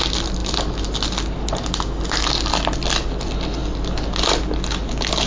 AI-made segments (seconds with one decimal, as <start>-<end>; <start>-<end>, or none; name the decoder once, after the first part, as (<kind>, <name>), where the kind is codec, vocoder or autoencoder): none